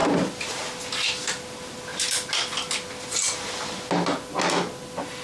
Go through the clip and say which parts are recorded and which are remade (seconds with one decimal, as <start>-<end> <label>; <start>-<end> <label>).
0.0-5.2 recorded